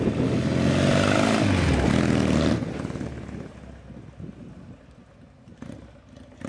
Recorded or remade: recorded